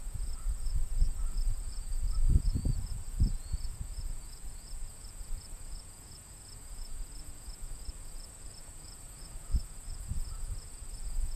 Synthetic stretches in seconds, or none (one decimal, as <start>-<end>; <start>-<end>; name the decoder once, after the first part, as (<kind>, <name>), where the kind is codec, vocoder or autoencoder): 0.0-11.4 (vocoder, Vocos)